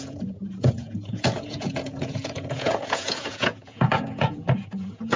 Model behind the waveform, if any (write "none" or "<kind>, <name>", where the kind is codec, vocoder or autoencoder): vocoder, Vocos